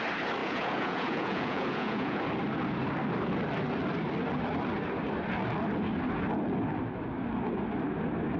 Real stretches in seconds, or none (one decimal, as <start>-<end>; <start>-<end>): 0.0-0.4; 2.2-8.4